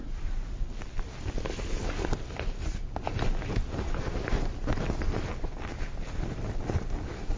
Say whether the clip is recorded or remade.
recorded